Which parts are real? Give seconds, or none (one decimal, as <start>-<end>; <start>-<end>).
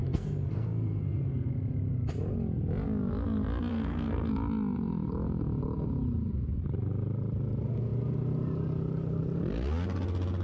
1.5-3.7; 4.3-10.4